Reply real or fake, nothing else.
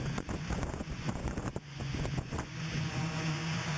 fake